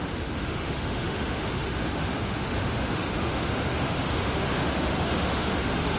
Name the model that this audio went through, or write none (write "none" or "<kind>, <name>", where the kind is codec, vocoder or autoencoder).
autoencoder, DAC-VAE